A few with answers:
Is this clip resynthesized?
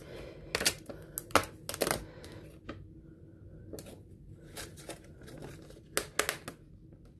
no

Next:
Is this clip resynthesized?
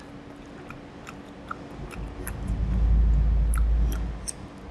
no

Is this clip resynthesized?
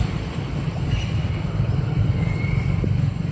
no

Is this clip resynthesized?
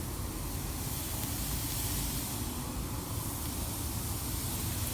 no